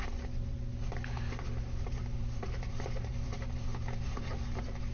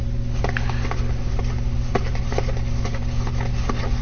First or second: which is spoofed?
first